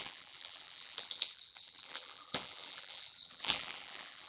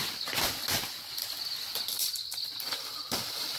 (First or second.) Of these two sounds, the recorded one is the second